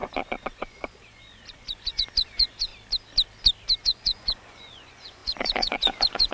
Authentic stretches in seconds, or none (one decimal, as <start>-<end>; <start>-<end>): 2.7-3.8